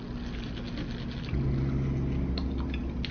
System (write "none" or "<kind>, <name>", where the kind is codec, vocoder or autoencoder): none